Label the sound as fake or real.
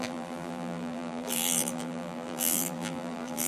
fake